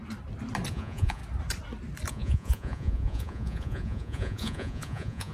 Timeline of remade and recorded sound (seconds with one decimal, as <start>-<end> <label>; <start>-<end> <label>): 0.0-0.7 recorded; 0.7-1.2 remade; 1.2-2.1 recorded; 2.1-5.3 remade